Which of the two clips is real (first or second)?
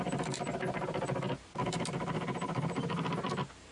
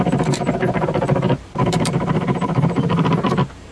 first